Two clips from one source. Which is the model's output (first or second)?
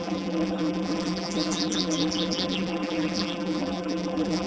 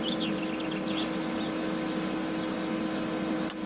first